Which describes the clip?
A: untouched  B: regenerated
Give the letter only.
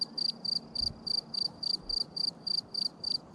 A